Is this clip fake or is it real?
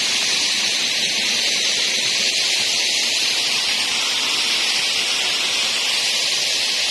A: real